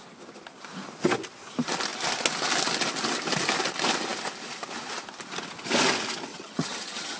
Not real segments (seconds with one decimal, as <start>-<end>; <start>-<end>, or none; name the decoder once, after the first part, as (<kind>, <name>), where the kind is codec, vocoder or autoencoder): 6.3-7.2 (vocoder, HiFi-GAN)